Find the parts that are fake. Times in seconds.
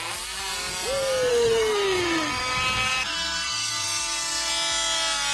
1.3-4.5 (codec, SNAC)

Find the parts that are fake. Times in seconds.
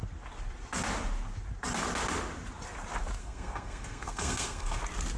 3.2-4.8 (codec, SNAC)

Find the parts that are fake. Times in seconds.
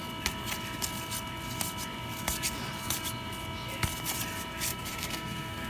4.7-5.7 (codec, SNAC)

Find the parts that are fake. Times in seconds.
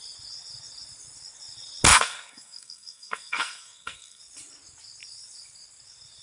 1.9-4.2 (codec, SNAC)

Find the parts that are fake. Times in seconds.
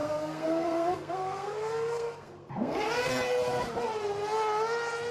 0.0-3.1 (codec, SNAC)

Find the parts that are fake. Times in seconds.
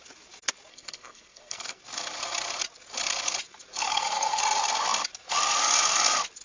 0.7-1.8 (codec, SNAC); 3.7-4.4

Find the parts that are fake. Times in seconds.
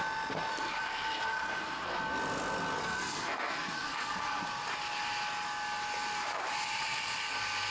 0.5-2.1 (codec, SNAC); 2.8-4.4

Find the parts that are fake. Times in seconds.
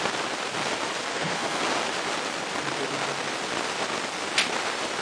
1.1-1.6 (codec, SNAC)